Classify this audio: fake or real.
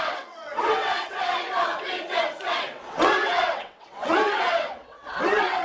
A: fake